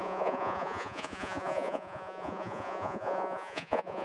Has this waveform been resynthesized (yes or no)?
yes